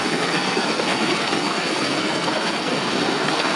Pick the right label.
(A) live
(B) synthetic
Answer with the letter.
B